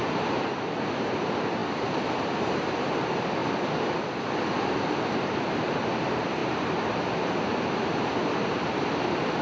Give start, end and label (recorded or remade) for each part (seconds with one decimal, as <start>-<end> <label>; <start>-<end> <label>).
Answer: 0.0-3.4 remade; 3.4-5.0 recorded; 5.0-9.4 remade